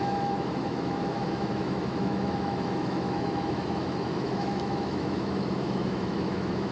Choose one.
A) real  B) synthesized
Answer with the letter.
B